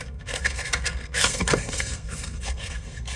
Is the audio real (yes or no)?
no